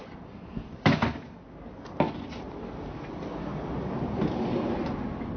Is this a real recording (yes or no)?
yes